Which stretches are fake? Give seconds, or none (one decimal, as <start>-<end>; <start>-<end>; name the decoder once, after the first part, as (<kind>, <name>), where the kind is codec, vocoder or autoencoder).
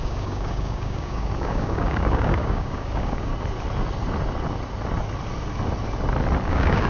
0.0-3.3 (codec, DAC); 6.5-6.9